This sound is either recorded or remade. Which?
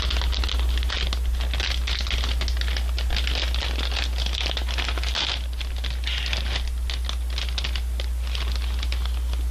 recorded